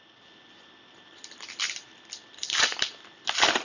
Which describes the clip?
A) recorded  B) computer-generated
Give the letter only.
A